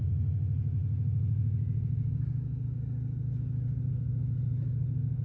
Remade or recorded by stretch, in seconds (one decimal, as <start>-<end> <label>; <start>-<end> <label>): 0.0-5.2 recorded